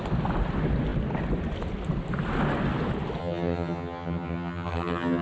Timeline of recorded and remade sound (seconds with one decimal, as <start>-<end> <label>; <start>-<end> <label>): 0.0-3.2 recorded; 3.2-5.2 remade